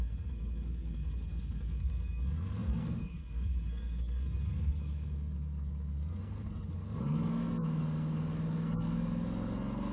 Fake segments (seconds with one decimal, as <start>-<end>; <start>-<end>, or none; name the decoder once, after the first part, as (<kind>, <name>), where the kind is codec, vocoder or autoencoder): 0.0-9.9 (codec, SNAC)